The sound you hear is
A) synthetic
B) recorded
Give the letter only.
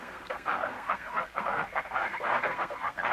A